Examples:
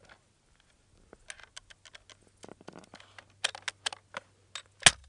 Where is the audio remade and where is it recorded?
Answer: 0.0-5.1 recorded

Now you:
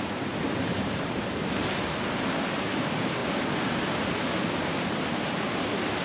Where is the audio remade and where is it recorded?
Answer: 0.0-0.7 recorded; 0.7-1.9 remade; 1.9-6.0 recorded

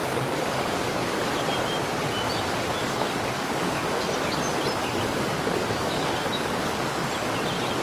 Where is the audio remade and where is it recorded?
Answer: 0.0-1.2 remade; 1.2-2.8 recorded; 2.8-4.0 remade; 4.0-4.8 recorded; 4.8-7.0 remade; 7.0-7.8 recorded

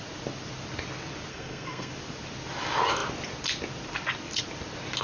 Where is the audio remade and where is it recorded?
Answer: 0.0-1.3 recorded; 1.3-1.9 remade; 1.9-5.0 recorded